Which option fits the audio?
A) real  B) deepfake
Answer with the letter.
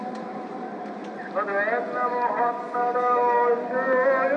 A